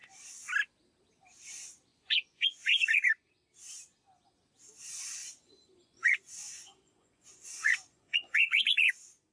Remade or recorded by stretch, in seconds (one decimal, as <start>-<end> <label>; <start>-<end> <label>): 0.0-1.9 recorded; 1.9-3.3 remade; 3.3-5.2 recorded; 5.2-8.9 remade; 8.9-9.3 recorded